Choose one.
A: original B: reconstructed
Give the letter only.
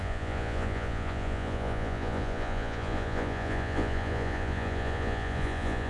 B